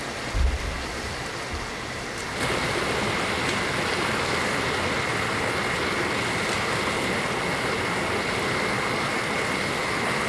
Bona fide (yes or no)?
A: yes